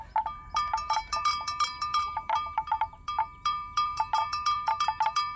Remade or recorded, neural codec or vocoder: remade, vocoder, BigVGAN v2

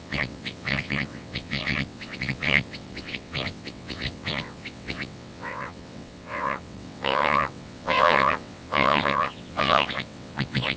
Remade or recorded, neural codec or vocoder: remade, vocoder, WaveNeXt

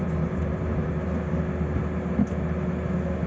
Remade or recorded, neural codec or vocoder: recorded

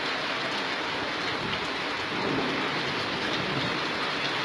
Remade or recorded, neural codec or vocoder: recorded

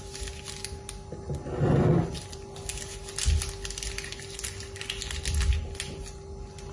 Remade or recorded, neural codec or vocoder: recorded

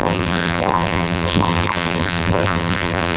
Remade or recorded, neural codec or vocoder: remade, vocoder, BigVGAN v2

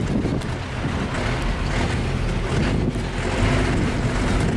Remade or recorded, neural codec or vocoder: recorded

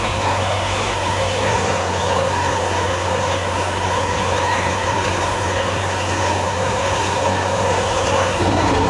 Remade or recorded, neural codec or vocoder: remade, codec, SNAC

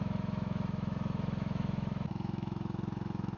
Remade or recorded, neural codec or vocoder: remade, autoencoder, DAC-VAE